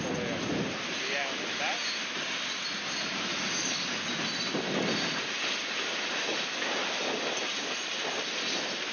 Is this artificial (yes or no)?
no